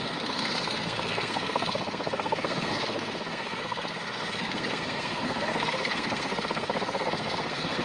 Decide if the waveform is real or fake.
fake